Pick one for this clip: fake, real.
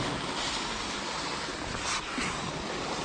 real